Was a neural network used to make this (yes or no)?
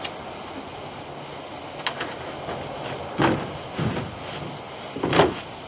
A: no